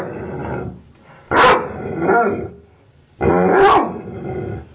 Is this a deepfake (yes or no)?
no